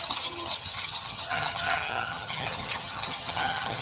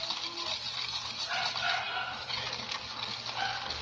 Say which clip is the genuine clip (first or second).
second